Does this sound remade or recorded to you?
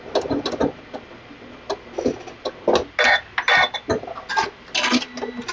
recorded